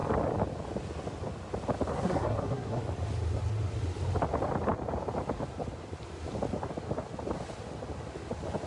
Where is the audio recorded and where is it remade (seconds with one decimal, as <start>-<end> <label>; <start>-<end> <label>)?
0.0-1.9 recorded; 1.9-2.8 remade; 2.8-8.7 recorded